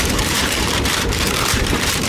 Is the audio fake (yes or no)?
yes